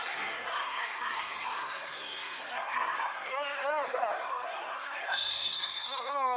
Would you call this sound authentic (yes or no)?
no